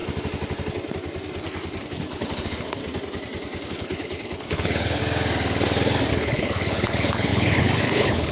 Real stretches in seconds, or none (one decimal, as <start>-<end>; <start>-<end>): 0.0-1.8; 2.8-3.7; 5.0-6.1